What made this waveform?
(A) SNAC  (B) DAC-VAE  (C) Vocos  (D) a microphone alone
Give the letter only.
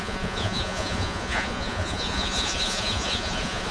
C